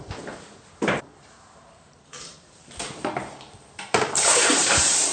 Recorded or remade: remade